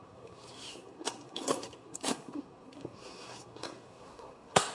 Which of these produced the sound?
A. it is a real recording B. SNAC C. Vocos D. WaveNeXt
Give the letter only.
B